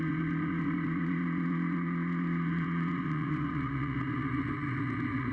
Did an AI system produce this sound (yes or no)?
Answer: yes